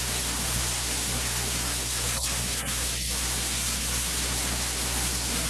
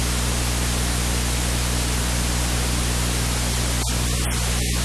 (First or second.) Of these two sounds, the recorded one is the second